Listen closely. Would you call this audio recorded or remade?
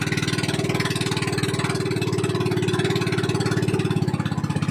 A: recorded